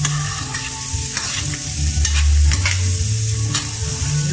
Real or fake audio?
real